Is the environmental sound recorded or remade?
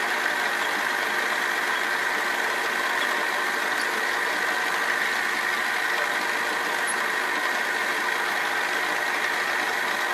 recorded